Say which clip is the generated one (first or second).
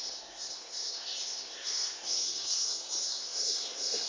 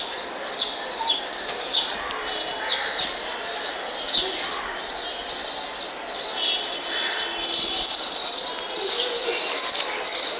first